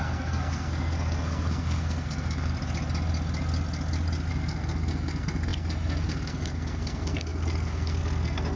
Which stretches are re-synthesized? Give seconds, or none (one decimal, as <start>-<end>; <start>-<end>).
0.0-2.5; 4.3-8.6